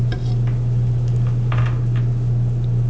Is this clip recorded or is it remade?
recorded